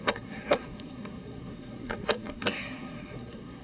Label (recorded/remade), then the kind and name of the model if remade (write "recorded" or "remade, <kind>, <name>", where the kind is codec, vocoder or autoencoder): remade, codec, SNAC